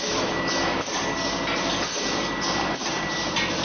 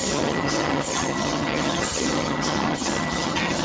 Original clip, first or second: first